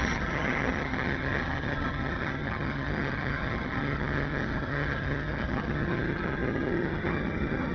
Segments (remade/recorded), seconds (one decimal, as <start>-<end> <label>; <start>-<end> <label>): 0.0-7.7 remade

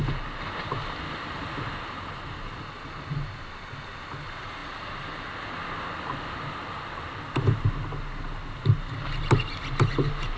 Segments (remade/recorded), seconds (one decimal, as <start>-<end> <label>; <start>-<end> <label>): 0.0-10.4 recorded

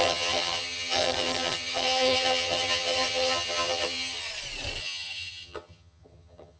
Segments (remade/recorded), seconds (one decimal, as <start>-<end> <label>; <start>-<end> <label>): 0.0-4.3 remade; 4.3-4.8 recorded; 4.8-6.6 remade

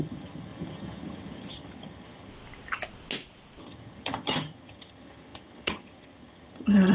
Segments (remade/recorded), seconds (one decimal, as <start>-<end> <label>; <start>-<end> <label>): 0.0-2.3 remade; 2.3-3.6 recorded; 3.6-6.9 remade

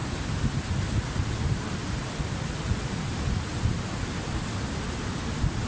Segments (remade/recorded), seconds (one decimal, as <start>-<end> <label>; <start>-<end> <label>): 0.0-5.7 recorded

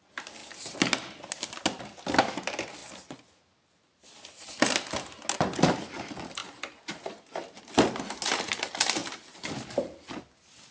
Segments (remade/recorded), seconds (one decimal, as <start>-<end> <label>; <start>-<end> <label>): 0.0-10.7 recorded

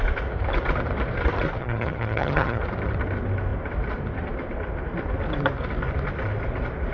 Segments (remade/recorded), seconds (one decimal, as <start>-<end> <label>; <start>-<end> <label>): 0.0-1.6 recorded; 1.6-2.6 remade; 2.6-6.9 recorded

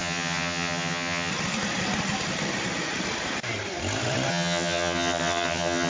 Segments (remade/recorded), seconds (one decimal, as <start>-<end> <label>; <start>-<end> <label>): 0.0-1.3 remade; 1.3-4.3 recorded; 4.3-5.9 remade